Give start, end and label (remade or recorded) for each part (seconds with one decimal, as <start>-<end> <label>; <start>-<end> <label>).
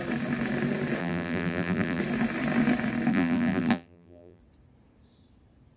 0.0-1.0 recorded; 1.0-2.0 remade; 2.0-3.1 recorded; 3.1-4.4 remade; 4.4-5.8 recorded